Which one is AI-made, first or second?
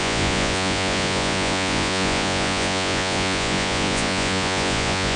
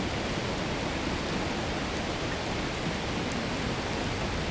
first